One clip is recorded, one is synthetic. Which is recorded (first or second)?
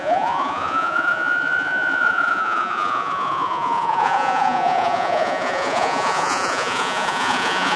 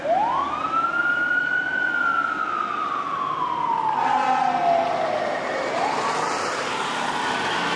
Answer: second